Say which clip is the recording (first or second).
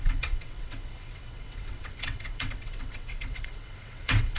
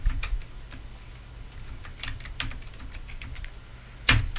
second